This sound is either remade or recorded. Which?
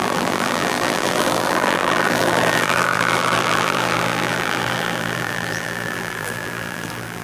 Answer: remade